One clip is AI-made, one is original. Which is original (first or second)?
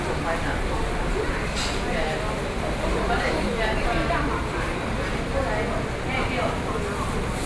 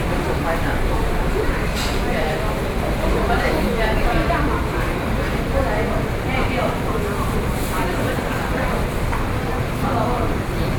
first